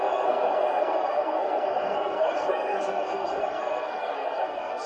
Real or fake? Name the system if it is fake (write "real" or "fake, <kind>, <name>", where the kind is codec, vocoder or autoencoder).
fake, codec, SNAC